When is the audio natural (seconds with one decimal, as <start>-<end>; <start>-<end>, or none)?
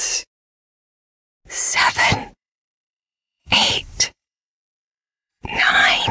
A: 0.0-2.1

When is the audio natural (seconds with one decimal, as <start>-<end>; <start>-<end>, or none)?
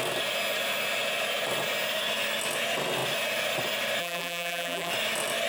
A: 0.0-4.0; 4.9-5.5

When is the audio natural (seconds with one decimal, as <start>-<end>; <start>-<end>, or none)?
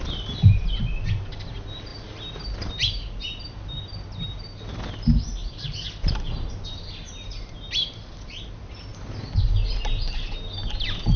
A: 0.0-5.4; 5.9-11.2